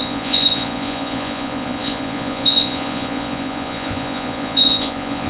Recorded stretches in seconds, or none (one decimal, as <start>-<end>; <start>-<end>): none